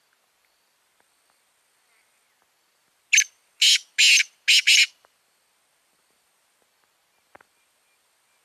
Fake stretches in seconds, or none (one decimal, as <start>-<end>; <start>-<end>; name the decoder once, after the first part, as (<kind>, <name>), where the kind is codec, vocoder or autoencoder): none